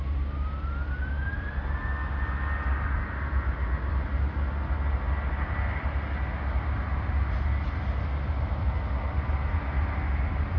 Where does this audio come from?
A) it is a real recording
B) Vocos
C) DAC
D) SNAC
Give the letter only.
A